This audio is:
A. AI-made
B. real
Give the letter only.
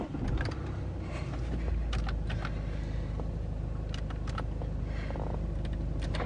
B